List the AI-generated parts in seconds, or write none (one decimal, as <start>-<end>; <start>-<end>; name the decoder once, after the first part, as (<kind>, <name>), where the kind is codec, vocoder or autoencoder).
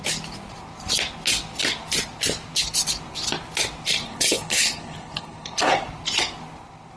4.0-5.7 (codec, HILCodec)